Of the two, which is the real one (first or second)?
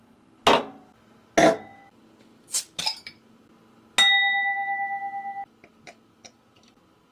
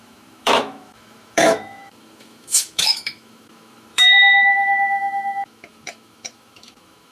first